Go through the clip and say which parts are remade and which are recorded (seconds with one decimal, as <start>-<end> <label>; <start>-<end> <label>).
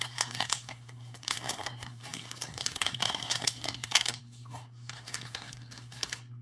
0.0-6.4 remade